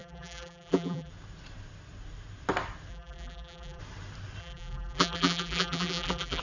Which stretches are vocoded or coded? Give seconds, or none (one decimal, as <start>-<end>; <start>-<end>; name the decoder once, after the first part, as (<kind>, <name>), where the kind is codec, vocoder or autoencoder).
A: 0.0-1.1 (vocoder, BigVGAN v2); 2.9-3.8; 4.4-6.4